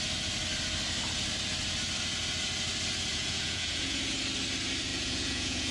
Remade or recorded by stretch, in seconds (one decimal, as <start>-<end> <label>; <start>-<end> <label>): 0.0-3.1 recorded; 3.1-4.0 remade; 4.0-4.9 recorded; 4.9-5.7 remade